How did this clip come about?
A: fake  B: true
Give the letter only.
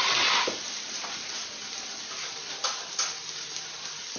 B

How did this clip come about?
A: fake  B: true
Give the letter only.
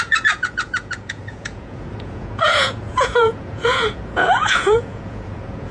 A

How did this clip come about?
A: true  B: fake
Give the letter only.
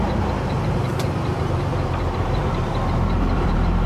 B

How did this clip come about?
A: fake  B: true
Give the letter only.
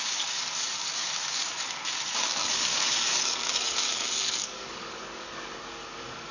A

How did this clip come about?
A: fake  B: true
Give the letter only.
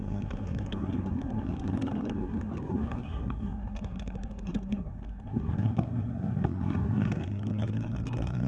A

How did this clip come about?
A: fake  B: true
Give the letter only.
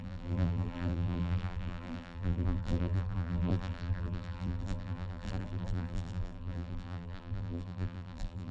A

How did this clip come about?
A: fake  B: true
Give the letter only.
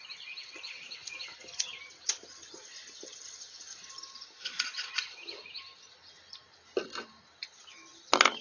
B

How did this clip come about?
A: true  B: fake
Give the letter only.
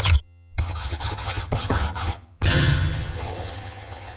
B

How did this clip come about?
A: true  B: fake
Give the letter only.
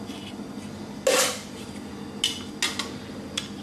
A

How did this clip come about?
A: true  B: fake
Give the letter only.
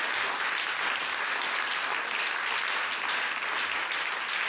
A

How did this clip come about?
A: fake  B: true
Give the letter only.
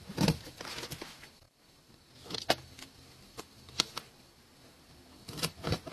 B